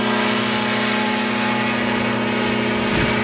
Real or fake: real